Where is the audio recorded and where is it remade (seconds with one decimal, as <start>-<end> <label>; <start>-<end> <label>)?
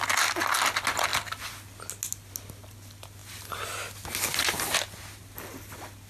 0.0-6.1 recorded